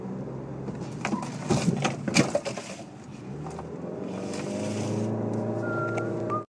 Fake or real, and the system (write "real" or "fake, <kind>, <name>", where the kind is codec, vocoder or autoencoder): real